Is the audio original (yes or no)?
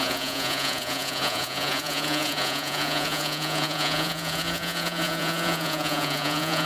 no